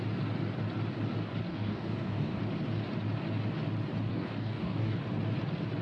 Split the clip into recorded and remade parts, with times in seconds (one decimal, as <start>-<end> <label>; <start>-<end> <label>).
0.0-1.5 recorded; 1.5-2.4 remade; 2.4-4.1 recorded; 4.1-5.0 remade; 5.0-5.8 recorded